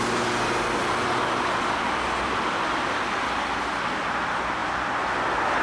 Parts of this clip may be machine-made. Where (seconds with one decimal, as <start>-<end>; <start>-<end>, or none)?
none